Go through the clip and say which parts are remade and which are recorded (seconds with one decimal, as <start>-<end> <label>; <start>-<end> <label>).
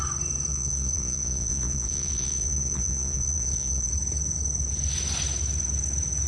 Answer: 0.0-0.5 recorded; 0.5-3.9 remade; 3.9-6.3 recorded